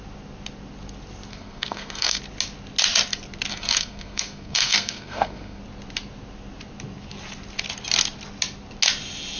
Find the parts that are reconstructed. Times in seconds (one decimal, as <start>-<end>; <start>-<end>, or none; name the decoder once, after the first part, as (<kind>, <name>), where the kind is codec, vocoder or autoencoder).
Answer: 1.3-2.2 (codec, SNAC); 3.5-5.6

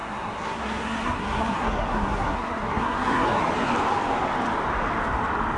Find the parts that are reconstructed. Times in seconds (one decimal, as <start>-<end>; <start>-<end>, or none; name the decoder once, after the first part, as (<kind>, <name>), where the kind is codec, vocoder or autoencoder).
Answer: 0.0-3.4 (codec, SNAC)